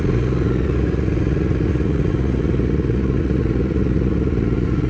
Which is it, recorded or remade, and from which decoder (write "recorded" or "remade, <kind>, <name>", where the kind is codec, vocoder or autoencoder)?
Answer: remade, vocoder, Vocos